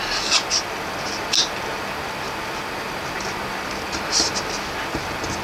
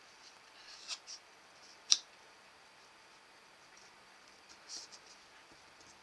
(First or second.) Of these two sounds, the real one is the first